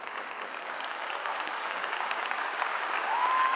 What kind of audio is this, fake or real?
fake